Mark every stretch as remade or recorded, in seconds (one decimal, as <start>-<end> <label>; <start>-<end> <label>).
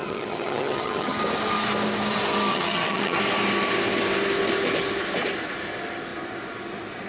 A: 0.0-1.2 remade; 1.2-2.5 recorded; 2.5-3.2 remade; 3.2-7.1 recorded